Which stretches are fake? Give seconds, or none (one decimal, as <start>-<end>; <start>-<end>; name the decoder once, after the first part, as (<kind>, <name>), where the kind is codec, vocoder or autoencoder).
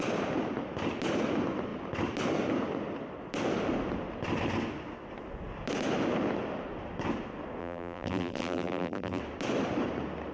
7.6-9.2 (vocoder, BigVGAN v2)